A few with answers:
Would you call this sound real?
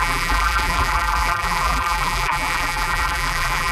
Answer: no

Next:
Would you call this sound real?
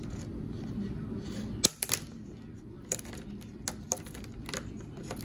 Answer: yes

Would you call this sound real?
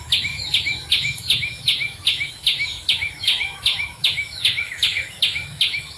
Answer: no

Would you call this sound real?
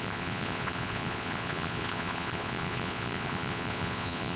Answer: no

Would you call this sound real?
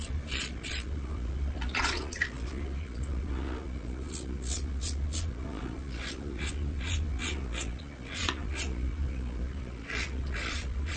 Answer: no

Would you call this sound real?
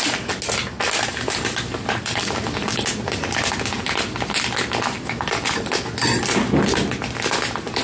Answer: yes